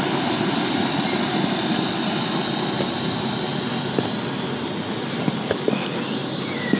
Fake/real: real